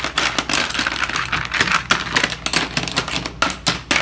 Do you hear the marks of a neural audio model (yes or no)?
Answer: no